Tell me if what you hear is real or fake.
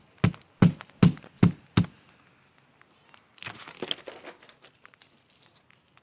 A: real